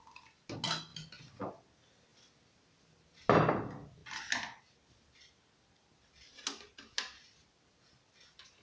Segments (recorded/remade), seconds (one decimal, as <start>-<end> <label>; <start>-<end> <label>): 0.0-8.6 recorded